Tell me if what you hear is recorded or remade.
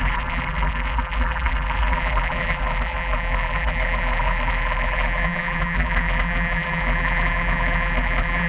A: remade